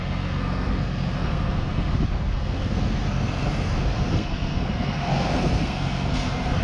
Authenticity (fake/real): fake